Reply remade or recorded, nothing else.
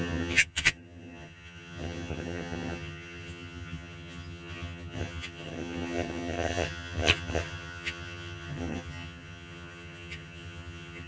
remade